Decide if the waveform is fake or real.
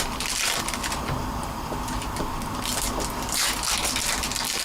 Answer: real